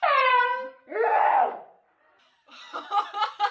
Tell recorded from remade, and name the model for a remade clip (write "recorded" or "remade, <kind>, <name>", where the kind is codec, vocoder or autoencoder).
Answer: recorded